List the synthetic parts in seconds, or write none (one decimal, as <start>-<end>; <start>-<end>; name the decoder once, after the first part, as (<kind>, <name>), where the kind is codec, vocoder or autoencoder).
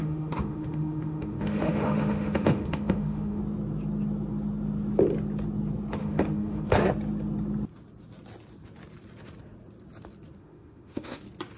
0.0-3.4 (autoencoder, DAC-VAE); 6.0-6.7; 10.4-11.2